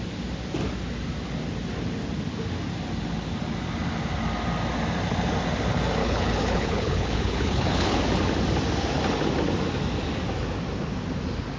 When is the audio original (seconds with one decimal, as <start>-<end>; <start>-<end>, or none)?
0.0-6.0; 8.0-11.6